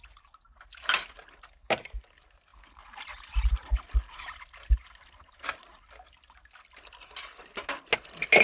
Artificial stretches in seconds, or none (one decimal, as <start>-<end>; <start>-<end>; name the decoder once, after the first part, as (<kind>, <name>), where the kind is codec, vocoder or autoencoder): none

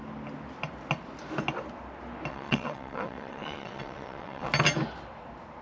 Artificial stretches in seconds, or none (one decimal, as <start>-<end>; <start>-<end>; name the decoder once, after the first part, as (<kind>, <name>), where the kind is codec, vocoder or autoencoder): 2.3-4.5 (vocoder, WaveNeXt)

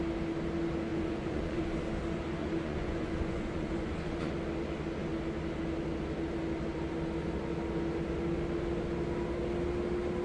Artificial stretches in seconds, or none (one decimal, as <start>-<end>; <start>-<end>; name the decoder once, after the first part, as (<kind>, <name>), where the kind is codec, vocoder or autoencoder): 0.9-1.7 (vocoder, Vocos); 2.4-4.4

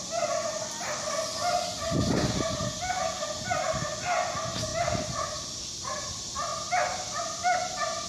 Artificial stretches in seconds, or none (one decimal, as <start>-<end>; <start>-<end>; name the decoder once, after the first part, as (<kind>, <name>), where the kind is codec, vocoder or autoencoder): none

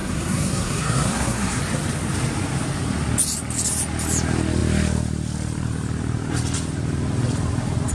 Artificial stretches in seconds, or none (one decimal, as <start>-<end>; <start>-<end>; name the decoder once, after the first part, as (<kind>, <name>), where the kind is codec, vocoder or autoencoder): 0.0-1.6 (codec, SNAC)

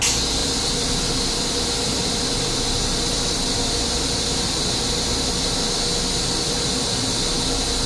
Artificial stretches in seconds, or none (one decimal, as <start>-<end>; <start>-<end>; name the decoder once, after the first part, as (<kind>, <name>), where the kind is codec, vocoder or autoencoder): 0.4-4.5 (vocoder, BigVGAN v2)